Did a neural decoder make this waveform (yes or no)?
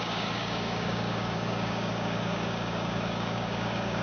yes